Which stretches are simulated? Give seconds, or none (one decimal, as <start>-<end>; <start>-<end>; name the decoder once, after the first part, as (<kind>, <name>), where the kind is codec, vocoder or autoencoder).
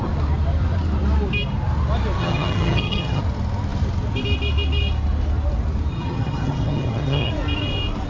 2.2-3.2 (vocoder, HiFi-GAN); 5.9-7.3